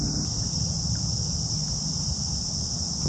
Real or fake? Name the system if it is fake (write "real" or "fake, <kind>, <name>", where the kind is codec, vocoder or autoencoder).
real